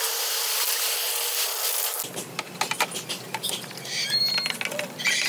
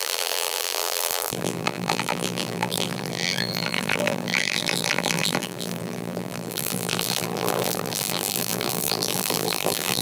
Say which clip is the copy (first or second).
second